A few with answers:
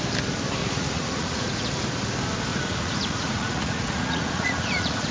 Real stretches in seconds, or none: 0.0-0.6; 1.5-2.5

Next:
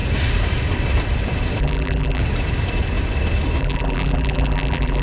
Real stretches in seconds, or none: 0.0-1.6; 2.2-3.6

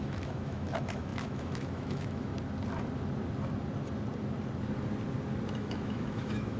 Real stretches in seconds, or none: 2.3-5.5

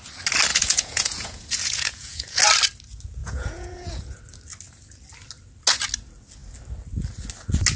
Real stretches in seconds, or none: 0.0-0.5; 2.4-3.2; 4.2-7.8

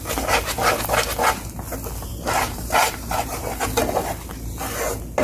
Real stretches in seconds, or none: 0.0-2.1; 3.6-5.2

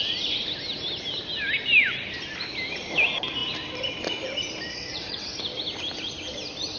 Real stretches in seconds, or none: 0.0-4.7; 5.4-6.8

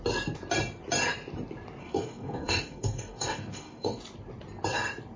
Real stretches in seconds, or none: 0.0-1.8; 4.0-5.2

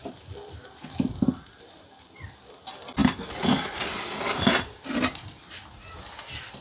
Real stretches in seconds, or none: 0.0-6.6